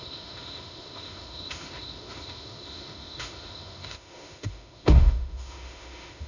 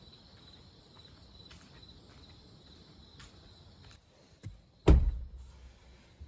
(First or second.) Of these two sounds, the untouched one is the second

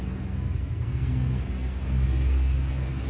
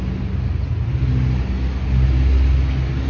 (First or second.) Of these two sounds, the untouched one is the second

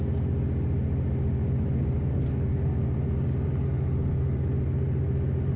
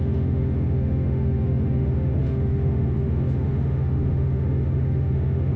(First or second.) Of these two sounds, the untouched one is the first